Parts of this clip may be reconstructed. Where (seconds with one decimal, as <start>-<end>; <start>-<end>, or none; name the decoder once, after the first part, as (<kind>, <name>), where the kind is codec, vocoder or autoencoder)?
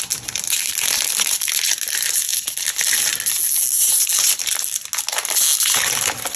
none